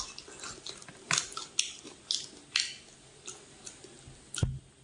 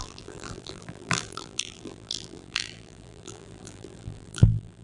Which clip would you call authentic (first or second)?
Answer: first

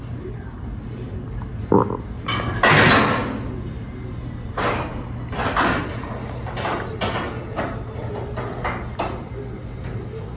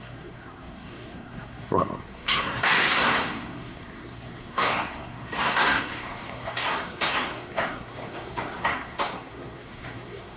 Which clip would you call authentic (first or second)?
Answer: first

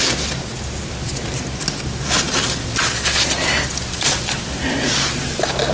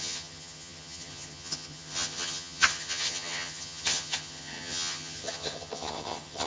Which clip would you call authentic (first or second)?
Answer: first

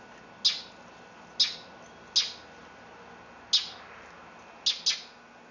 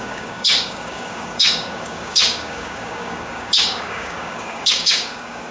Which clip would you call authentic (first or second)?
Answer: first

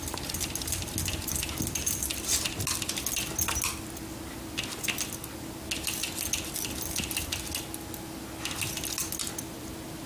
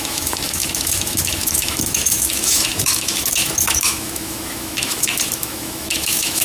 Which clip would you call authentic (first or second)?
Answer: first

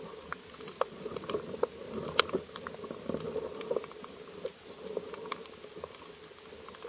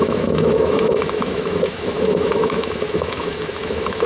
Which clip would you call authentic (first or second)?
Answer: first